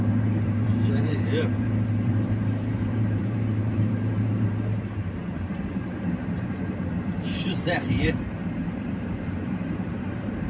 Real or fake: fake